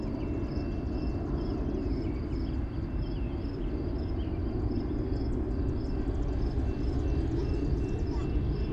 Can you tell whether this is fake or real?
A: real